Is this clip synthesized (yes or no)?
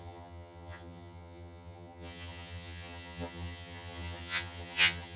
yes